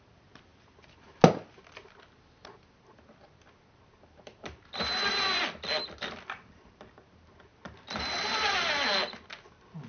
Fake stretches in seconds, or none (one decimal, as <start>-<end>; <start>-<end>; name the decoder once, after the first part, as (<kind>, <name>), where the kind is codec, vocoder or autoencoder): none